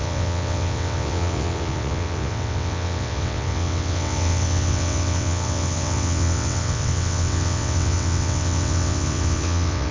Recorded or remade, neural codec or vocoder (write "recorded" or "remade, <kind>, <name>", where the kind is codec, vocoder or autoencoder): remade, vocoder, WaveNeXt